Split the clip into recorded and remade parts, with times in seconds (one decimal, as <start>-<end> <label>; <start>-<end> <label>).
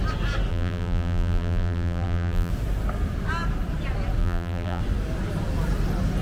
0.0-0.5 recorded; 0.5-2.5 remade; 2.5-4.2 recorded; 4.2-4.8 remade; 4.8-6.2 recorded